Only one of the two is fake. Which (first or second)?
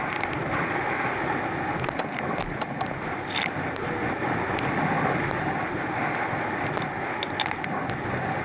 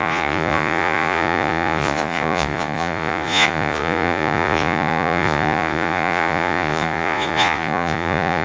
second